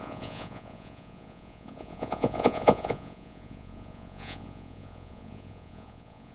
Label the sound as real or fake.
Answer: fake